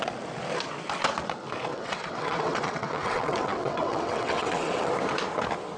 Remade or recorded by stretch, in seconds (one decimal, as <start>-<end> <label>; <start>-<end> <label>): 0.0-1.7 recorded; 1.7-4.9 remade; 4.9-5.8 recorded

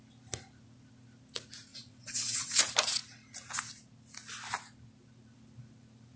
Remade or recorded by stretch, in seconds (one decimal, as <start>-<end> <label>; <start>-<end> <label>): 0.0-1.7 recorded; 1.7-2.6 remade; 2.6-6.2 recorded